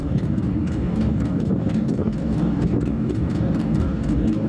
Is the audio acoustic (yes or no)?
no